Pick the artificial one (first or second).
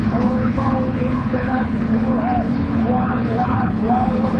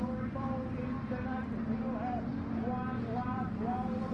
first